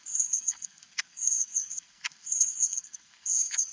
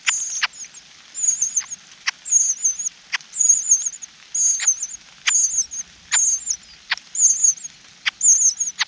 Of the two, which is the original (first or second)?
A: second